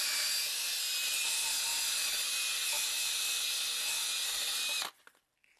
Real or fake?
real